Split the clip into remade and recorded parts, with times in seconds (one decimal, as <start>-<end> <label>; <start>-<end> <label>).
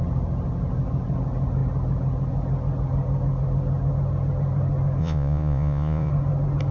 0.0-5.0 recorded; 5.0-6.1 remade; 6.1-6.7 recorded